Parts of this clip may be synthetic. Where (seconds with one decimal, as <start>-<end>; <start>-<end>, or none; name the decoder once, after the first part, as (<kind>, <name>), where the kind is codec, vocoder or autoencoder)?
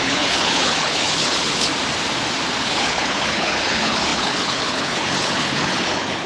0.0-1.7 (codec, HILCodec); 2.6-6.3